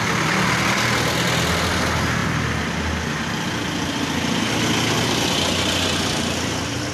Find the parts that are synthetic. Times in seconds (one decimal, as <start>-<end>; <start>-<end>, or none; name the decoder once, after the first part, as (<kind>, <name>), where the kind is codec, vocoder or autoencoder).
none